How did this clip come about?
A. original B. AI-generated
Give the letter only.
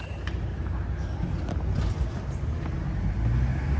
A